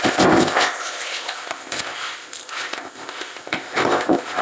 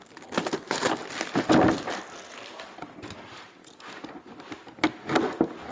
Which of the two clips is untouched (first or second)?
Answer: second